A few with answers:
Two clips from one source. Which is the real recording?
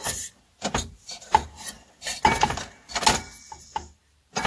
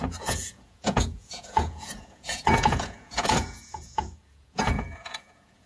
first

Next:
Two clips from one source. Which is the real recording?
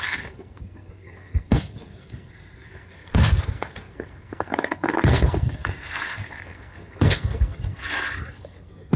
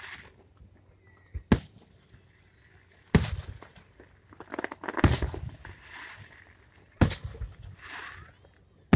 second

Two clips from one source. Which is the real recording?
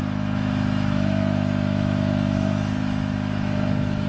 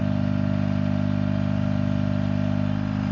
second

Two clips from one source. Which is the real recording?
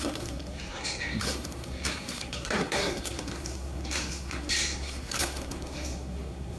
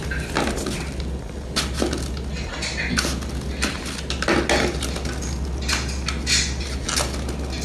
second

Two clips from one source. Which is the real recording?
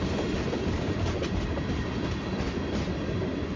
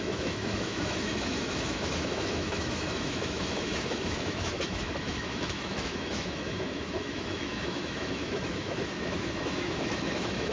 first